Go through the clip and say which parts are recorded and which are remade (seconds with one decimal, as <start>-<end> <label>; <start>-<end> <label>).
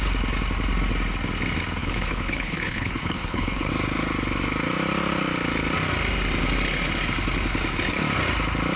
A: 0.0-1.8 recorded; 1.8-3.7 remade; 3.7-8.8 recorded